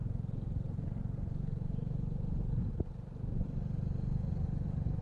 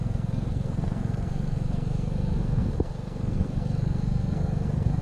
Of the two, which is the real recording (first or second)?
first